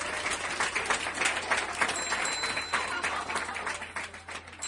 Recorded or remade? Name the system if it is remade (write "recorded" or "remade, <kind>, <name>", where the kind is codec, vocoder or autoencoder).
recorded